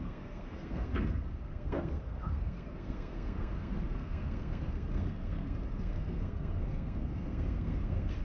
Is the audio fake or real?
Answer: fake